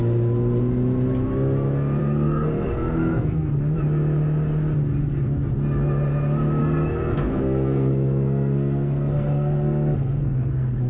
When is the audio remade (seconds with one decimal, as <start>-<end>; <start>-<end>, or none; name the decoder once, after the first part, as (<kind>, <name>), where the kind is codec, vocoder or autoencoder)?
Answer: 2.0-3.5 (codec, SNAC); 6.6-10.9